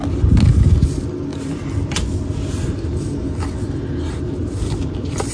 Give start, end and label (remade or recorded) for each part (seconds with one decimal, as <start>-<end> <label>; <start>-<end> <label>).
0.0-5.3 recorded